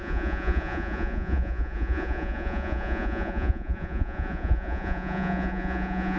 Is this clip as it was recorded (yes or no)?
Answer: no